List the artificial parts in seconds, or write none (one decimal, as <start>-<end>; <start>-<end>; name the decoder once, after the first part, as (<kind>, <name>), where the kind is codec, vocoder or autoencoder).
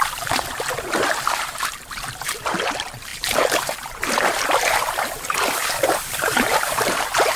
0.0-7.4 (vocoder, BigVGAN v2)